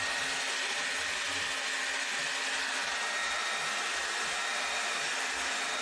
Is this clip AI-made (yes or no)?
no